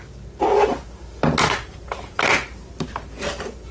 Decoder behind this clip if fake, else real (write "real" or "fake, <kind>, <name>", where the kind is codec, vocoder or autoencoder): real